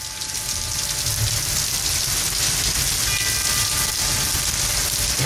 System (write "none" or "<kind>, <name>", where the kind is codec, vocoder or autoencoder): none